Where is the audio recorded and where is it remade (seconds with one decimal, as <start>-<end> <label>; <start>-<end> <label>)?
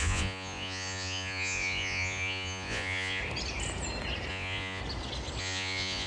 0.0-3.2 remade; 3.2-4.3 recorded; 4.3-4.8 remade; 4.8-5.4 recorded; 5.4-6.1 remade